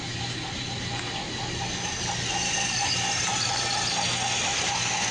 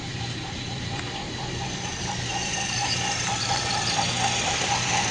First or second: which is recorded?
first